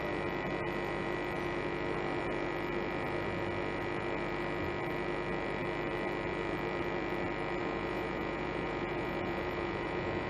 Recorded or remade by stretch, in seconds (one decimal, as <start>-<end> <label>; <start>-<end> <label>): 0.0-7.6 recorded; 7.6-10.3 remade